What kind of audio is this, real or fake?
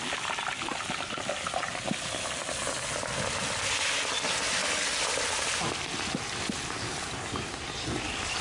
real